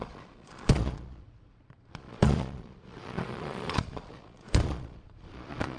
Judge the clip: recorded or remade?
remade